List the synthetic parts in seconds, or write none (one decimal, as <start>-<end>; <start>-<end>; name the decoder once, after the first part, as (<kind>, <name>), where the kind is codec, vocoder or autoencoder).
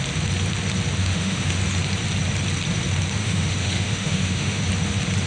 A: 1.0-1.6 (autoencoder, DAC-VAE); 3.2-4.6